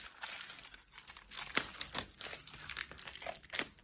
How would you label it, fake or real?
real